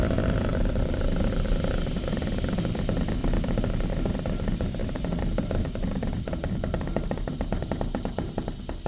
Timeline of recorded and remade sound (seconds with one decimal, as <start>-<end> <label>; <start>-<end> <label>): 0.0-0.5 recorded; 0.5-1.7 remade; 1.7-3.2 recorded; 3.2-3.9 remade; 3.9-4.8 recorded; 4.8-6.0 remade; 6.0-8.9 recorded